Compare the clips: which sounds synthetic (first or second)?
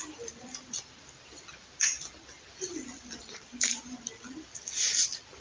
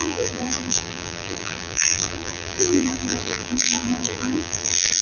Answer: second